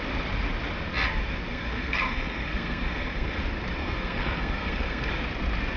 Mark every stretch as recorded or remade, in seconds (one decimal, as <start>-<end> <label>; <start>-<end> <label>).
0.0-1.5 recorded; 1.5-3.4 remade; 3.4-3.8 recorded; 3.8-5.1 remade; 5.1-5.8 recorded